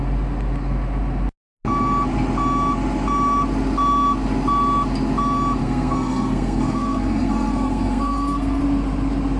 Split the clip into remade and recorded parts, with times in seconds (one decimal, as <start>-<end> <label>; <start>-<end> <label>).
0.0-5.6 recorded; 5.6-8.6 remade; 8.6-9.4 recorded